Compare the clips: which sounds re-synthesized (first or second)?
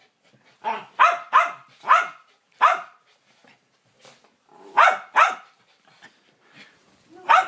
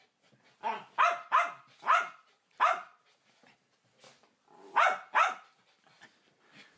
first